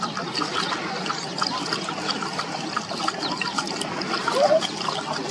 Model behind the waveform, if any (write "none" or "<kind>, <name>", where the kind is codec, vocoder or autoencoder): none